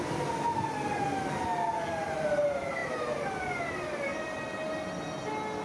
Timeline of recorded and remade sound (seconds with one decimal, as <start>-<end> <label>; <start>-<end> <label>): 0.0-5.6 recorded